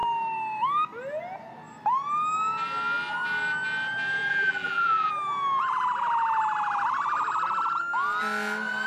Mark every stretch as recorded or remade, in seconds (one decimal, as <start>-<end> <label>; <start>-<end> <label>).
0.0-4.3 recorded; 4.3-5.1 remade; 5.1-8.9 recorded